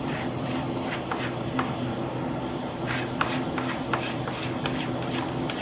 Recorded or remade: recorded